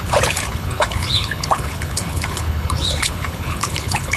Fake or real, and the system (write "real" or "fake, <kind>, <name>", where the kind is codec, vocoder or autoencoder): fake, codec, HILCodec